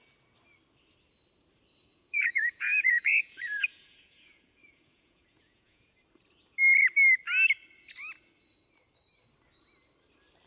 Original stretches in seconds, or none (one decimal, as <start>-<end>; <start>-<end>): 0.0-1.9; 6.0-10.5